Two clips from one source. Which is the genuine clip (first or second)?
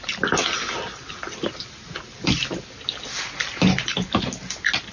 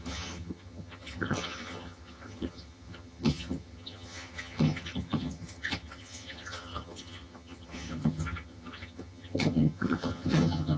first